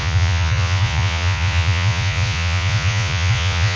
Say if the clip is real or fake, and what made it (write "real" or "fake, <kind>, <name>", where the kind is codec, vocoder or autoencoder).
fake, vocoder, Vocos